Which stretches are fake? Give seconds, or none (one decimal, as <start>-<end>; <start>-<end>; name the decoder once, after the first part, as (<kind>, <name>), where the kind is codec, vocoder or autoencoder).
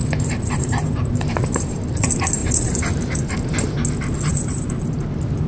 0.0-1.8 (vocoder, BigVGAN v2); 2.4-3.2; 4.3-4.8